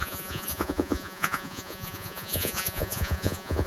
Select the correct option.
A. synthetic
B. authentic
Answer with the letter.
A